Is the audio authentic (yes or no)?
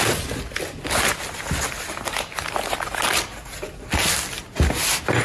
yes